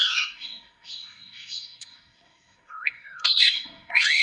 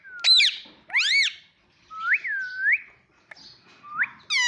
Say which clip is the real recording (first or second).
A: second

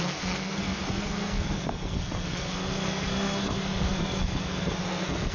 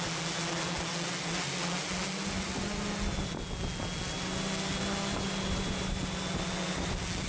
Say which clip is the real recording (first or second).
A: second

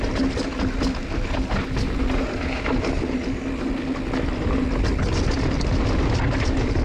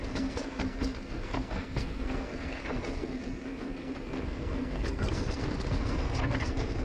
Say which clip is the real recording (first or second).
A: first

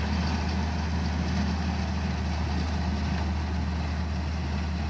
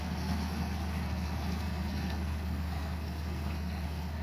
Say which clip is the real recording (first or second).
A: first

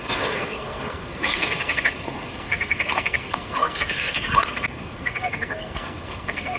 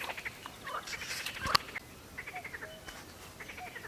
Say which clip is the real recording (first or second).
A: second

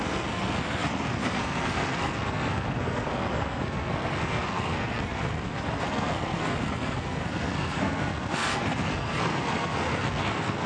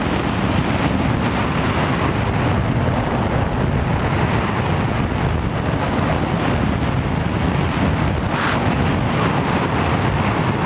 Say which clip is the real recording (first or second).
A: second